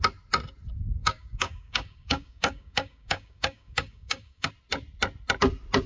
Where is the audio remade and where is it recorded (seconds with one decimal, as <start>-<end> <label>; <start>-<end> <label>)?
0.0-1.0 recorded; 1.0-4.5 remade; 4.5-5.9 recorded